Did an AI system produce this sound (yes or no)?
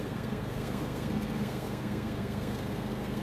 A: yes